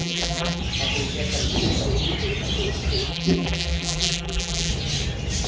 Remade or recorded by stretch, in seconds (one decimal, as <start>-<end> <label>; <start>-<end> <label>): 0.0-0.6 remade; 0.6-3.1 recorded; 3.1-4.7 remade; 4.7-5.5 recorded